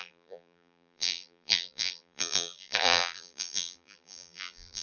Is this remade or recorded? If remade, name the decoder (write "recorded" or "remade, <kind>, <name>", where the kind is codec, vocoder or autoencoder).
remade, vocoder, BigVGAN v2